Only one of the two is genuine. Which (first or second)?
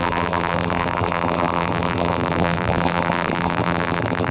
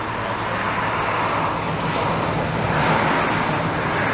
second